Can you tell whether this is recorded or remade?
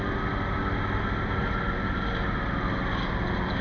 recorded